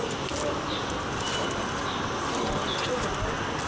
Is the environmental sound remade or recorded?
recorded